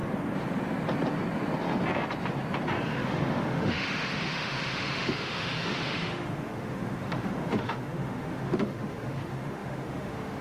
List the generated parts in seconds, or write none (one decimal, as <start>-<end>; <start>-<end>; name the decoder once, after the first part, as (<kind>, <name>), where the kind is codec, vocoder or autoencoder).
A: 2.9-10.4 (autoencoder, DAC-VAE)